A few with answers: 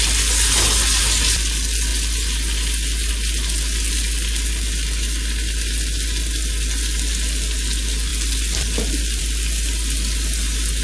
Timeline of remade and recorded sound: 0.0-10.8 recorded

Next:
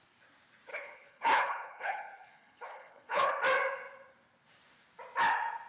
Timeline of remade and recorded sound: 0.0-0.7 recorded; 0.7-3.3 remade; 3.3-5.7 recorded

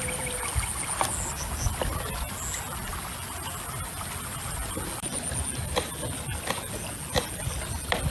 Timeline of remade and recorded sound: 0.0-8.1 recorded

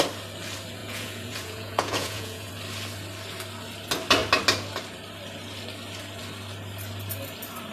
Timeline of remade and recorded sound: 0.0-0.8 recorded; 0.8-2.5 remade; 2.5-7.7 recorded